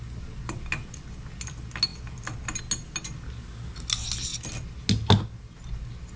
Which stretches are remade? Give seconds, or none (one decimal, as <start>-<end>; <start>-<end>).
none